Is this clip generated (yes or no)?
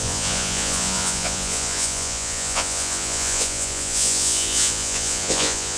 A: yes